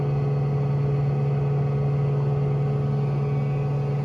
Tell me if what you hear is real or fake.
real